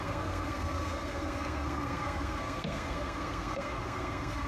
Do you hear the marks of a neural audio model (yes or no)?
yes